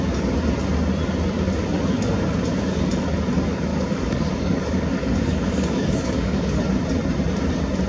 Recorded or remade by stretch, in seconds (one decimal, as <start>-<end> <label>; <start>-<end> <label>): 0.0-3.7 recorded; 3.7-6.6 remade; 6.6-7.9 recorded